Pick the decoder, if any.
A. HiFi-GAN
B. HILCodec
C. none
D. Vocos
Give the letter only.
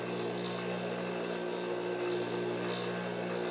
C